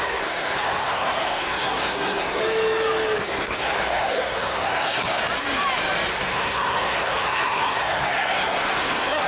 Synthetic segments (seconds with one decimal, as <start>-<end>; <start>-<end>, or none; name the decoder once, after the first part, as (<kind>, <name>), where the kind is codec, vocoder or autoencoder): 0.0-2.4 (codec, SNAC); 3.2-5.2; 6.1-9.3